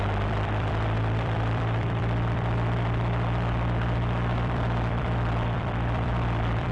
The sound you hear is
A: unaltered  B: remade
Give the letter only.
B